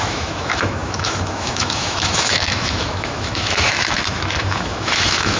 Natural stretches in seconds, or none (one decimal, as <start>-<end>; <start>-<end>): none